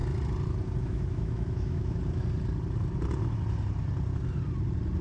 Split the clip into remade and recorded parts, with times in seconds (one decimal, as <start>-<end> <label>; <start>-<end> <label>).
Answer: 0.0-0.8 recorded; 0.8-2.0 remade; 2.0-5.0 recorded